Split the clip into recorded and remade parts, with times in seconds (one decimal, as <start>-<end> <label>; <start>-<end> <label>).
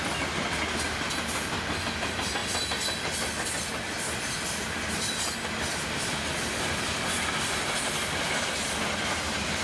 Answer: 0.0-9.6 recorded